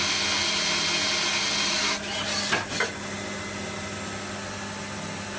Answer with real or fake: real